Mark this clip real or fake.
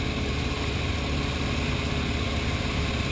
real